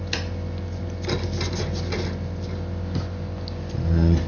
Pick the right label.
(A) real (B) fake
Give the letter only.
A